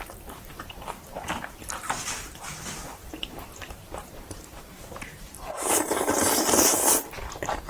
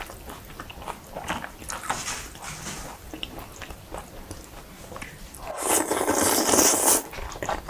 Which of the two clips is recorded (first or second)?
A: second